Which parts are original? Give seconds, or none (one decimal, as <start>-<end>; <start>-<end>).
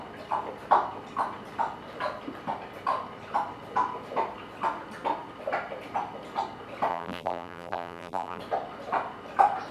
0.0-6.9; 8.4-9.7